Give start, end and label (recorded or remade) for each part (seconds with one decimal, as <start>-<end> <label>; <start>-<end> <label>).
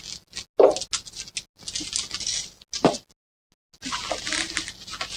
0.0-5.2 recorded